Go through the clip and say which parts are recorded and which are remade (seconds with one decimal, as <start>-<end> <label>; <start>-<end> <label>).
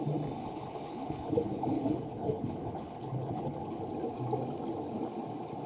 0.0-0.4 recorded; 0.4-3.8 remade; 3.8-5.7 recorded